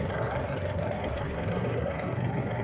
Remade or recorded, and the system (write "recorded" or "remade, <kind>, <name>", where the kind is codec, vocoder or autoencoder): remade, codec, SNAC